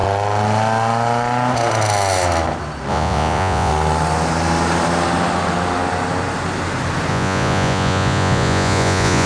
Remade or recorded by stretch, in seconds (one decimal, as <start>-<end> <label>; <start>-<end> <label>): 0.0-2.9 recorded; 2.9-3.7 remade; 3.7-7.1 recorded; 7.1-9.3 remade